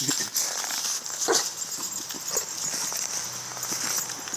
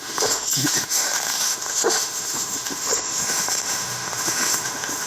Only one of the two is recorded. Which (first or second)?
first